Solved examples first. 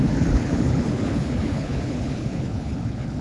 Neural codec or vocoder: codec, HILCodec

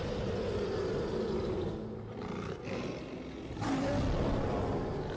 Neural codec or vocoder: none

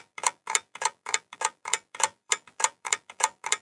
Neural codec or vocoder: vocoder, BigVGAN v2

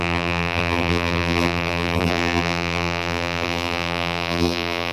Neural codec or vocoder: vocoder, BigVGAN v2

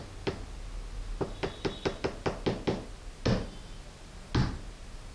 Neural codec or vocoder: none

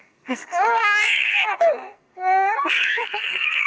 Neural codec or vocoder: codec, SNAC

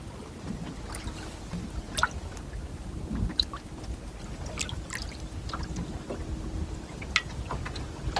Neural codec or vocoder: none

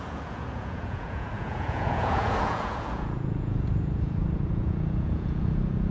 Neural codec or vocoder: vocoder, Vocos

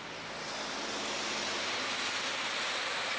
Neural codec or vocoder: none